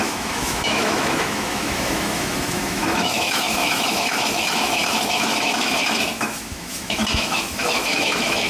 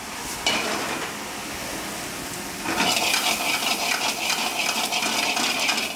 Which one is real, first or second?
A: second